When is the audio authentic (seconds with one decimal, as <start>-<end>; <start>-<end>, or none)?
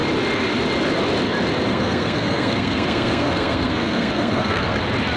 0.0-1.7; 4.8-5.2